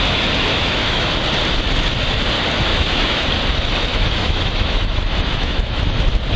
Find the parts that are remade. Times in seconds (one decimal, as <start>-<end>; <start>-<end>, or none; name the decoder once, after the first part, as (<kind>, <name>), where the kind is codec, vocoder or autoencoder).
0.5-1.1 (autoencoder, DAC-VAE); 2.7-3.3; 3.9-5.8